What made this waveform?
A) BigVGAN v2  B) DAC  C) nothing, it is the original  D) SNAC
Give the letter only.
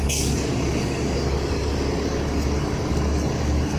B